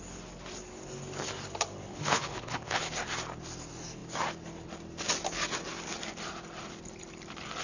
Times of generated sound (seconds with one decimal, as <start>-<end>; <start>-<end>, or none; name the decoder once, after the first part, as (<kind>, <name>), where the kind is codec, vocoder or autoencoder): 1.9-2.8 (codec, HILCodec)